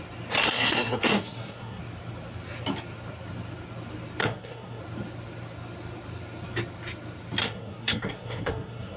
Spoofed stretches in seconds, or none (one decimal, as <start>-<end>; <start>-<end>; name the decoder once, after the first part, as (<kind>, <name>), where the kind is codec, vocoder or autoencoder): 0.4-1.8 (codec, SNAC); 4.2-4.8; 7.4-9.0